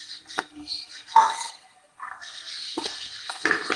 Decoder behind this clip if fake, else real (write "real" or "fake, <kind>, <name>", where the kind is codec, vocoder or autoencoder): fake, codec, SNAC